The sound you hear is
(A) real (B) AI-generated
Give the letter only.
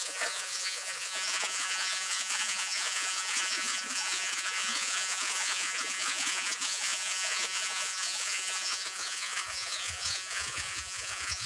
B